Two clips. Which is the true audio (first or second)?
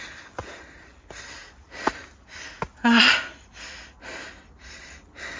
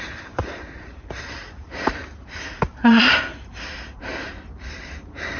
first